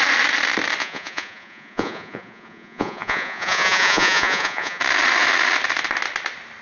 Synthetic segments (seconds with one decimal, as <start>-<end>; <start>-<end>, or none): 0.8-4.8